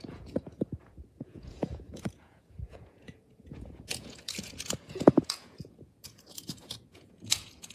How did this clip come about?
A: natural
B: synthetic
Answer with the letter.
B